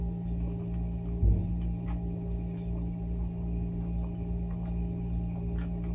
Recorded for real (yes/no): yes